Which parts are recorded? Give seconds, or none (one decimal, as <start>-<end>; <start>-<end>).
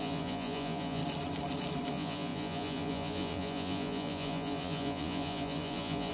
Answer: 1.0-1.9